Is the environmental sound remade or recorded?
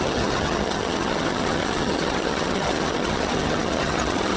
remade